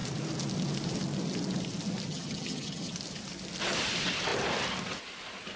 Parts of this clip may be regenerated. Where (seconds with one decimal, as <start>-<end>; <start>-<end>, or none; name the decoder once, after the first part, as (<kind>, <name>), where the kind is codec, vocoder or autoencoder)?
2.1-2.9 (vocoder, HiFi-GAN)